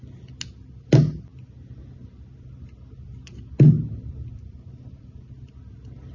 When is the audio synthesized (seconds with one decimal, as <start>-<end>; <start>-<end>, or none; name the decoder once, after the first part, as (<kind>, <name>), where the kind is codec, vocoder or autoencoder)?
none